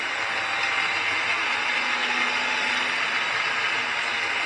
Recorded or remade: recorded